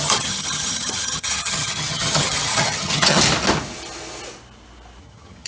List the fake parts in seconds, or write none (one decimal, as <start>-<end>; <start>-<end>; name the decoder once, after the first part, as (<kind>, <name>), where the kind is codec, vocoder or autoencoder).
0.0-3.2 (vocoder, HiFi-GAN); 5.0-5.5